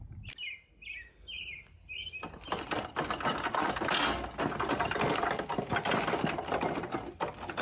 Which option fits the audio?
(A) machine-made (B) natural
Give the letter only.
B